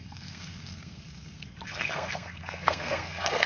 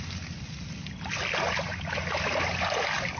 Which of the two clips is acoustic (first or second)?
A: second